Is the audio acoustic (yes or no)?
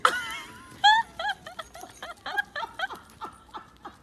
yes